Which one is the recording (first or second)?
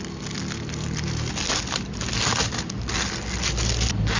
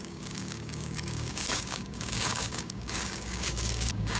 first